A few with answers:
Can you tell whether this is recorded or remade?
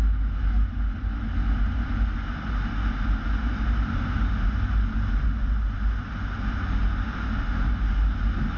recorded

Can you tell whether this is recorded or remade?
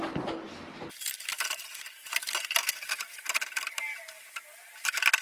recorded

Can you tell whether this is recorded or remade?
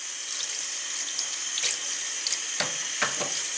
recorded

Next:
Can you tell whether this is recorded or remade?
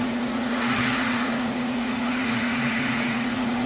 remade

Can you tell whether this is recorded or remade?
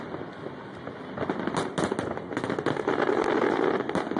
recorded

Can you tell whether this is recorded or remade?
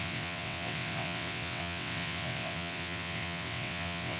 remade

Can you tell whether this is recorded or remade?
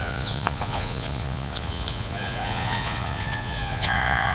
remade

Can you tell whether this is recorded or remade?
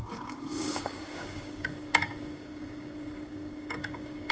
remade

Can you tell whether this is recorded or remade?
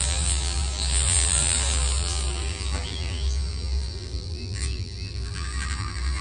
remade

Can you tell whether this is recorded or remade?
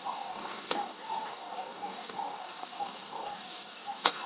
remade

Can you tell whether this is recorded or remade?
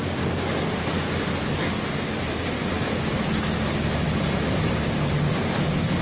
recorded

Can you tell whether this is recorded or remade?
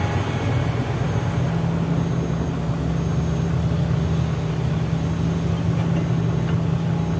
recorded